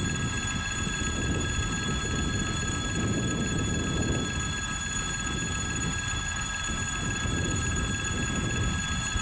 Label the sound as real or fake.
fake